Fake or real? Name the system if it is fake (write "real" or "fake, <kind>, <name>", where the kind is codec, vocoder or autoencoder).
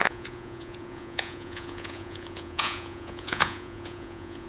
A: fake, vocoder, Vocos